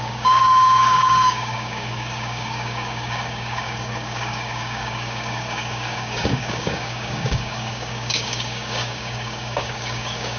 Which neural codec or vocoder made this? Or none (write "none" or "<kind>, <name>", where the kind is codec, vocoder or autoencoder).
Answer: codec, DAC